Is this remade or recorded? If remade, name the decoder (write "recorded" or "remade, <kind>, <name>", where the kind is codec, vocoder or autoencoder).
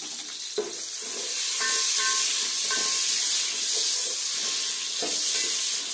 recorded